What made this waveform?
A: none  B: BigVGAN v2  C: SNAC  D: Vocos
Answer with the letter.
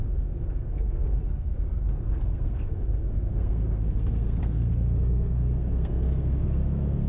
C